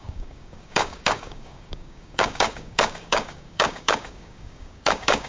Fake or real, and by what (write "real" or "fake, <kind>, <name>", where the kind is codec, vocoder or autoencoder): fake, codec, DAC